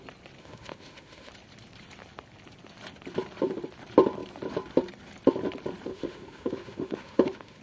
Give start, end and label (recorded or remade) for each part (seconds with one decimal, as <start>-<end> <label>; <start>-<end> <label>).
0.0-0.4 recorded; 0.4-1.3 remade; 1.3-5.9 recorded; 5.9-7.6 remade